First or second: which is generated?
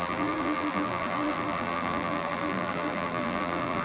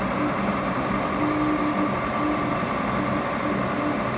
first